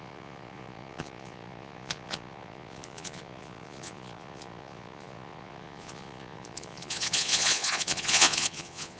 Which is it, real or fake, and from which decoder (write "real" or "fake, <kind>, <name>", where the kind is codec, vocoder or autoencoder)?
fake, vocoder, Vocos